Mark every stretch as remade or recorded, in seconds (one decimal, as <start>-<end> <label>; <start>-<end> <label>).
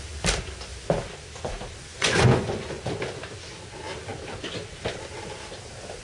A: 0.0-1.9 recorded; 1.9-2.8 remade; 2.8-6.0 recorded